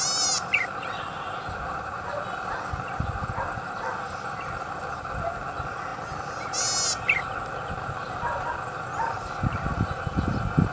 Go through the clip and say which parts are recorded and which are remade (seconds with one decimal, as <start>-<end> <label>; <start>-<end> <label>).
0.0-10.7 recorded